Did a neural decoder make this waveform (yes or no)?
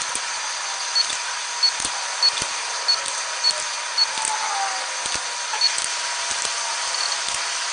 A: no